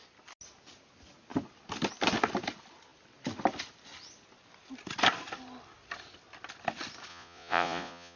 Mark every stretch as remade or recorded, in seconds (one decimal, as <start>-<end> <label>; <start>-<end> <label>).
0.0-7.1 recorded; 7.1-8.2 remade